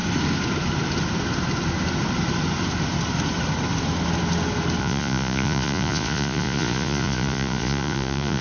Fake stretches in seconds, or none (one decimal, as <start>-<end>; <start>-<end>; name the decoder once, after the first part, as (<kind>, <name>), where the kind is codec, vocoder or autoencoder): 4.8-8.4 (vocoder, Vocos)